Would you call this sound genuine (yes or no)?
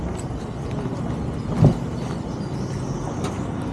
yes